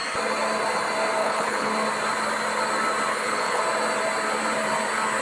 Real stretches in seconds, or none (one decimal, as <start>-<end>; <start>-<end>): 0.0-1.2; 1.7-3.1; 3.6-5.2